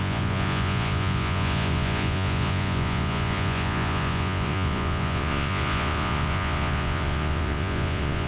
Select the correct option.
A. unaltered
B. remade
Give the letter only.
B